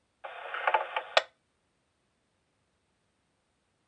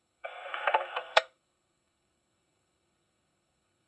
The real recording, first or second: first